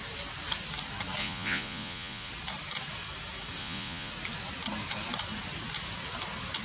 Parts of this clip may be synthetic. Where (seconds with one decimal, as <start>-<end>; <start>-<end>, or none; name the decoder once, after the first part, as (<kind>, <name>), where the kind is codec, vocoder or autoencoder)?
1.2-2.3 (vocoder, Vocos); 3.6-4.1